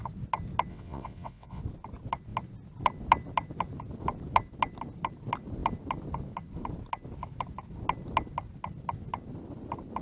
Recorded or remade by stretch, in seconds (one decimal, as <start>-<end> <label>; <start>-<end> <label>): 0.0-0.7 recorded; 0.7-1.6 remade; 1.6-10.0 recorded